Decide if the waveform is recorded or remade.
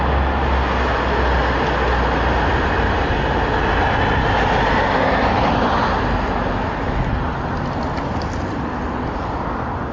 recorded